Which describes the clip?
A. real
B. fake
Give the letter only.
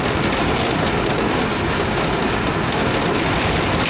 A